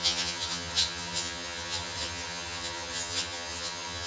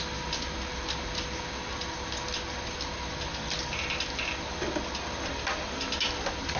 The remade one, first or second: first